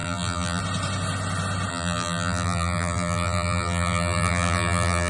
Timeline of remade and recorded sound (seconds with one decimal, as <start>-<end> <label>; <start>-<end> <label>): 0.0-0.6 remade; 0.6-1.7 recorded; 1.7-5.1 remade